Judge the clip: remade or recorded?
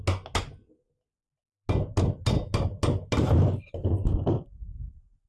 recorded